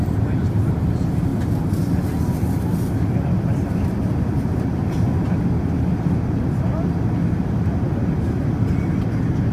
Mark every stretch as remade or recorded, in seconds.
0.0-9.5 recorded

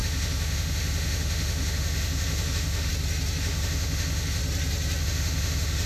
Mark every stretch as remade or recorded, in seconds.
0.0-2.9 remade; 2.9-3.4 recorded; 3.4-4.4 remade; 4.4-5.0 recorded; 5.0-5.9 remade

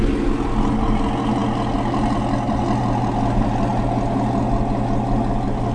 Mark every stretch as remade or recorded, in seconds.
0.0-5.7 recorded

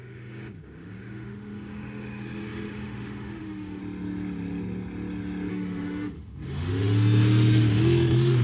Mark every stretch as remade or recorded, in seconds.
0.0-3.8 remade; 3.8-5.5 recorded; 5.5-8.4 remade

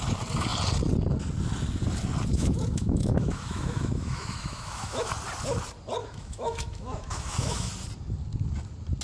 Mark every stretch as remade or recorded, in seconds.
0.0-2.3 recorded; 2.3-5.1 remade; 5.1-6.0 recorded; 6.0-7.7 remade; 7.7-9.0 recorded